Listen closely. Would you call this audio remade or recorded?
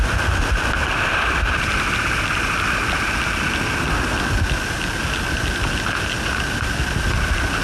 recorded